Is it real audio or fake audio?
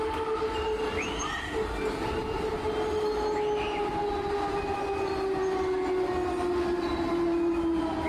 real